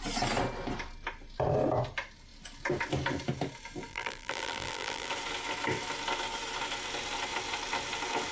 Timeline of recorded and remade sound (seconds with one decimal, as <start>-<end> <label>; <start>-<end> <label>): 0.0-3.9 recorded; 3.9-5.1 remade; 5.1-8.3 recorded